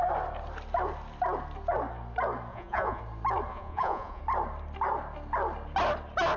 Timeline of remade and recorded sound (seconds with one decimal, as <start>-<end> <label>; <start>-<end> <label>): 0.0-2.5 recorded; 2.5-3.0 remade; 3.0-3.5 recorded; 3.5-4.2 remade; 4.2-6.4 recorded